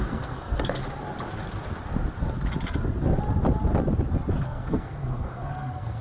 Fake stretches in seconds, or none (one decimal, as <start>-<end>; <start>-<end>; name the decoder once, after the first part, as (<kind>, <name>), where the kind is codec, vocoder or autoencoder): 0.0-0.8 (codec, SNAC); 4.4-6.0